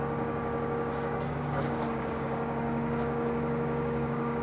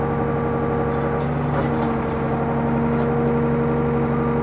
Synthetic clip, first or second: first